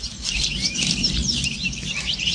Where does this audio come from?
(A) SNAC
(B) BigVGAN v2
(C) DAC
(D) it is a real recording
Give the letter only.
B